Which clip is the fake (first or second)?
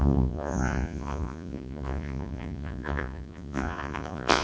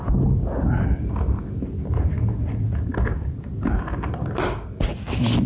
first